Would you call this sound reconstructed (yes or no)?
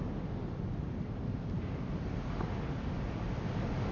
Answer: no